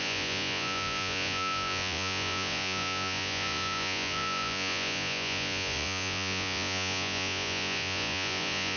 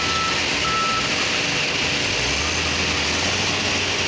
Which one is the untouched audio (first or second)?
second